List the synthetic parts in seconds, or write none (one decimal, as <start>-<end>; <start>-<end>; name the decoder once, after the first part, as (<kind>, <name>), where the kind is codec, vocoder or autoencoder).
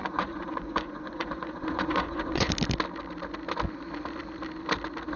0.0-2.5 (vocoder, Vocos)